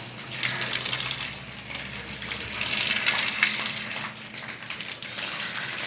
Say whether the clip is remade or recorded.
recorded